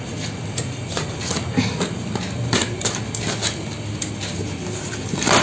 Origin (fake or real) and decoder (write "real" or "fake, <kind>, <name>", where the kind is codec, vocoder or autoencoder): real